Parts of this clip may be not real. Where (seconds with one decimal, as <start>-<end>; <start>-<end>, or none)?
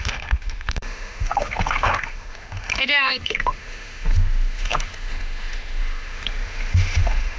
0.0-7.4